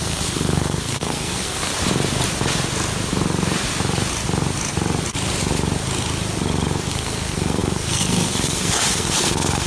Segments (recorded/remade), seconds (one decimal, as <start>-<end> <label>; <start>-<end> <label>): 0.0-1.7 remade; 1.7-6.9 recorded; 6.9-9.7 remade